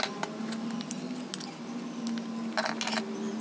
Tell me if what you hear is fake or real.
real